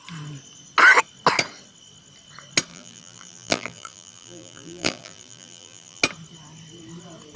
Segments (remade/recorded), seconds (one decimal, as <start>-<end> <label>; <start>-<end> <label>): 0.0-2.7 recorded; 2.7-6.0 remade; 6.0-7.4 recorded